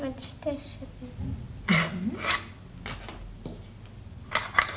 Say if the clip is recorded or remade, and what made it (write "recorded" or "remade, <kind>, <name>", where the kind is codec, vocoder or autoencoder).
recorded